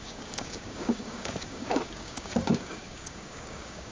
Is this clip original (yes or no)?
no